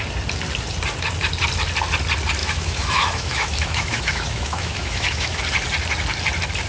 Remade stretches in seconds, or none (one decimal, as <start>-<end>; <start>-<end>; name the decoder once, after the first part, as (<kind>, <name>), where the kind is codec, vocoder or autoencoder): 2.4-5.4 (autoencoder, DAC-VAE)